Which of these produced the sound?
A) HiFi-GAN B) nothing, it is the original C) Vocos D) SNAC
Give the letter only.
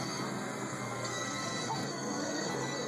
D